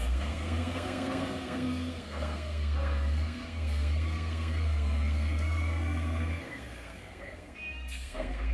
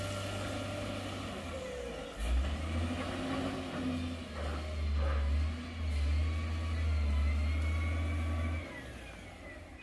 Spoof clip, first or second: first